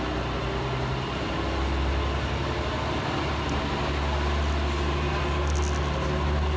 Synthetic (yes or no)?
no